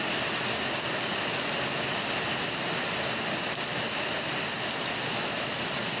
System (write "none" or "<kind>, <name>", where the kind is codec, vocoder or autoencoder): none